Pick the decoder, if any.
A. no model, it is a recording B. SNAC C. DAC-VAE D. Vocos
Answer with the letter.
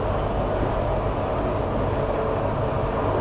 A